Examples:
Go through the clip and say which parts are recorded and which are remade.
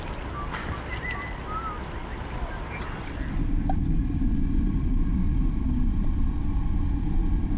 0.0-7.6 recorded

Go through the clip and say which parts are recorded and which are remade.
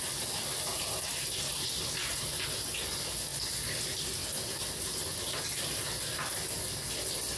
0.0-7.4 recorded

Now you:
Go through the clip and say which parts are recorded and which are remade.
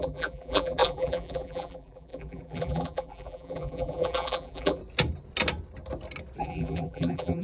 0.0-4.8 remade; 4.8-6.4 recorded; 6.4-7.4 remade